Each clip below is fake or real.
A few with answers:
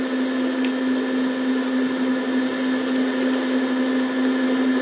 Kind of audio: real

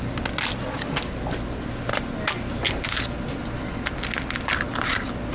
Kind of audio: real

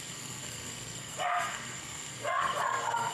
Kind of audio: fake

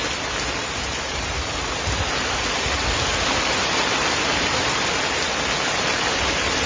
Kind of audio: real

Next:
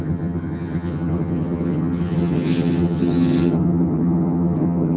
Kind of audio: fake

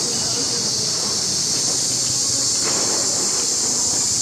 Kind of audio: real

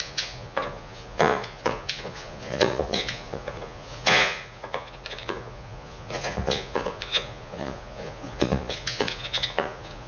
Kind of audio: fake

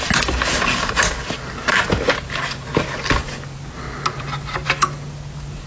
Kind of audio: real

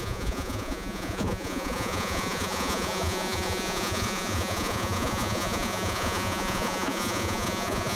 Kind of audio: fake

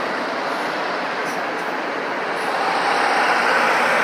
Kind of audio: fake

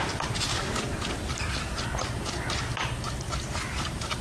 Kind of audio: real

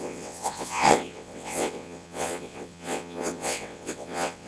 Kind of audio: fake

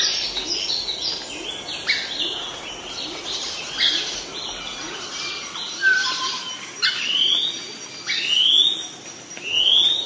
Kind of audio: real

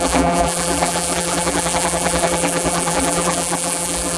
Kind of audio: fake